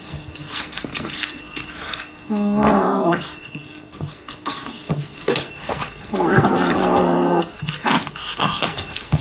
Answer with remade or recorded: remade